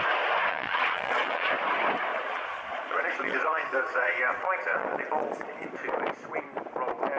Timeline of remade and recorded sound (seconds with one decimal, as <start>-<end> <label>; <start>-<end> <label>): 0.0-0.5 recorded; 0.5-1.5 remade; 1.5-2.1 recorded; 2.1-5.7 remade; 5.7-7.2 recorded